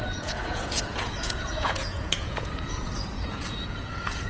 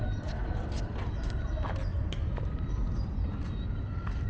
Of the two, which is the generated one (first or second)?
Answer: first